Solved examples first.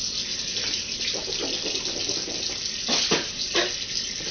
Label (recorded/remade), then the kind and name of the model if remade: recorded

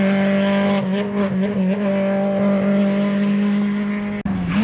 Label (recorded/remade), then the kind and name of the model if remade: recorded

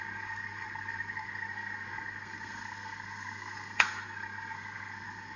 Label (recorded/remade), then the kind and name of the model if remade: remade, codec, SNAC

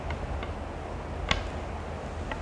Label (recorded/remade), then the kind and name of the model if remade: recorded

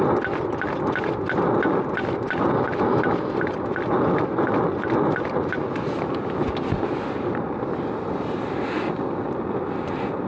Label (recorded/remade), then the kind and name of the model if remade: recorded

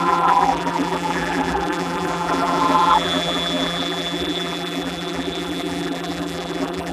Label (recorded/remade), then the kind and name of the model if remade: remade, vocoder, BigVGAN v2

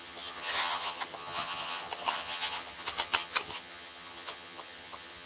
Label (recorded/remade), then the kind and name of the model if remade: remade, vocoder, HiFi-GAN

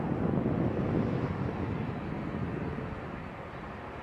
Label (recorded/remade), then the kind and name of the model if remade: recorded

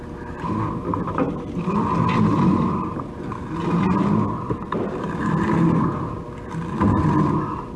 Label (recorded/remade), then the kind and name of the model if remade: recorded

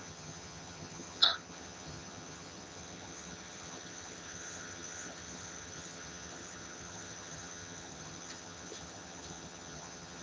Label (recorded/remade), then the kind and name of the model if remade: remade, vocoder, HiFi-GAN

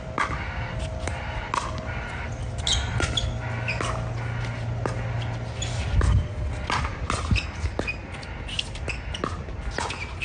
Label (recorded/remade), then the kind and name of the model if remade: recorded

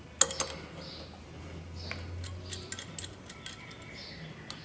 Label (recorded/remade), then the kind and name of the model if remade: recorded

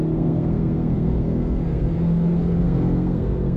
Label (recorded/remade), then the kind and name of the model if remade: remade, codec, SNAC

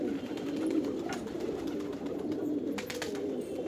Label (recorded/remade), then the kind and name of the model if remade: recorded